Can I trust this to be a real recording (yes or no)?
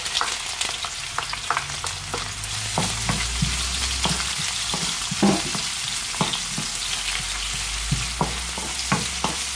yes